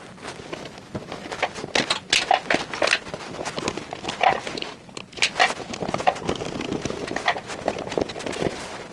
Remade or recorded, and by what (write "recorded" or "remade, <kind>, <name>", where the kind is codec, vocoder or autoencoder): recorded